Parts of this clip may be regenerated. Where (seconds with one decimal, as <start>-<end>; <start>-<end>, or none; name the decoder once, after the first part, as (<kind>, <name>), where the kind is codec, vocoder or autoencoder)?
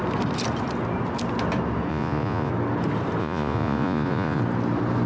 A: 1.9-2.5 (vocoder, Vocos); 3.2-4.4